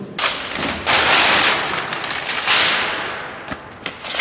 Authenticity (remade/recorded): recorded